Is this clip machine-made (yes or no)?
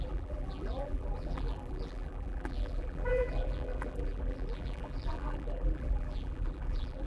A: yes